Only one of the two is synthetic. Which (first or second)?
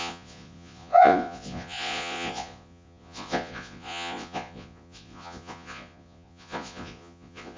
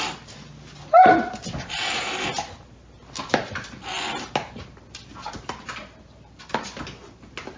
first